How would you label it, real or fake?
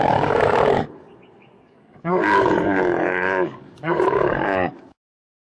fake